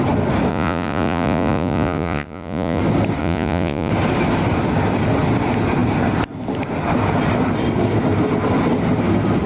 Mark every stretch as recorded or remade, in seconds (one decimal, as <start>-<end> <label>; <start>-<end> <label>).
0.0-0.5 recorded; 0.5-2.8 remade; 2.8-3.2 recorded; 3.2-3.9 remade; 3.9-9.5 recorded